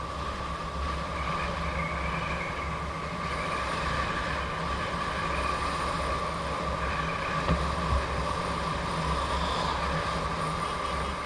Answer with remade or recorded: recorded